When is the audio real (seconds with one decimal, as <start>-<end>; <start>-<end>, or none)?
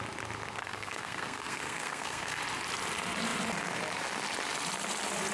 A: 0.0-0.6; 2.4-5.3